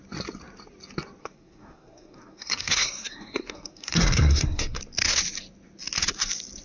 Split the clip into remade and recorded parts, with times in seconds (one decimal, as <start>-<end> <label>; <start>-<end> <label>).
0.0-1.2 recorded; 1.2-4.8 remade; 4.8-6.6 recorded